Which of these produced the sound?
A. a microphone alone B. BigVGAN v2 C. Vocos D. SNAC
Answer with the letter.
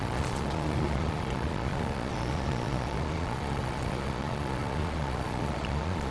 C